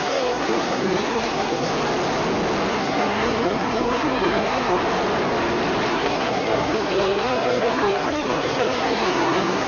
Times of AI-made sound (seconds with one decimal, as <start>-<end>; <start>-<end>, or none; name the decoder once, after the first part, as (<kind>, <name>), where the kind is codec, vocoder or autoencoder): 0.0-1.7 (codec, SNAC); 2.7-4.8; 5.9-9.7